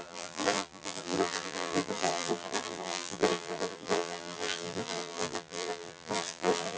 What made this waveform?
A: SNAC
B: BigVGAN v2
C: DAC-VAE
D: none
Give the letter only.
B